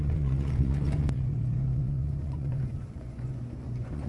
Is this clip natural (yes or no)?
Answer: no